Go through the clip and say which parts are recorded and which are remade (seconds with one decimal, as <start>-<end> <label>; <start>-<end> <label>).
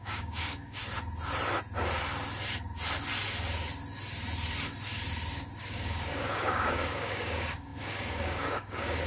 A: 0.0-0.8 remade; 0.8-5.6 recorded; 5.6-9.1 remade